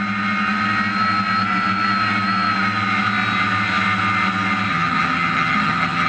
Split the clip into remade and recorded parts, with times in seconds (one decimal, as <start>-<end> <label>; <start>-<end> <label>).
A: 0.0-4.7 recorded; 4.7-6.1 remade